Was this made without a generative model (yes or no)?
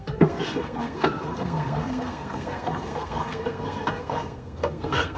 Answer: no